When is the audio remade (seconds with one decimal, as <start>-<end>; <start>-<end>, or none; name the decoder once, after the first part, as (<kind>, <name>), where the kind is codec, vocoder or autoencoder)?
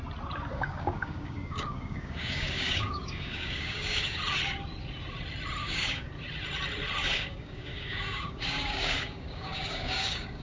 0.5-4.2 (codec, DAC); 5.6-6.1; 7.0-10.4